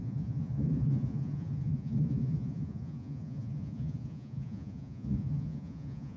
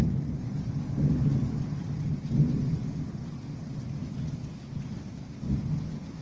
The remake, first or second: first